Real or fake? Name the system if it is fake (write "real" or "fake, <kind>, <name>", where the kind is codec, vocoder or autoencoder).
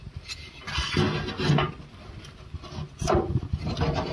real